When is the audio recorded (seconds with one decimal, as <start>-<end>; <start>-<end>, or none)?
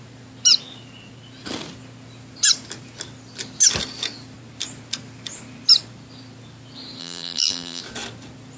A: 0.0-7.0; 7.8-8.6